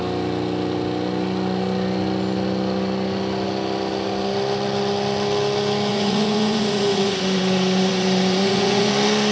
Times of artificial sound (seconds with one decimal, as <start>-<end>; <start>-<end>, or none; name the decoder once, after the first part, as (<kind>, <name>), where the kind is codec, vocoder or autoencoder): 5.9-8.9 (vocoder, Vocos)